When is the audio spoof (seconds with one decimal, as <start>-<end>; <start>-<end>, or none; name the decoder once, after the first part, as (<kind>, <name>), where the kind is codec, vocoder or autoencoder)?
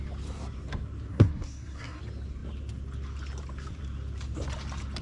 1.1-2.0 (codec, SNAC)